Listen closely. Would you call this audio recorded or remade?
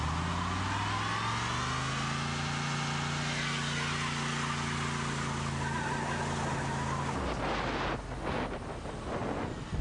recorded